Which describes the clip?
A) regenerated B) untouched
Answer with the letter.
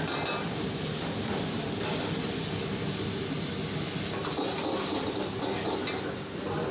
B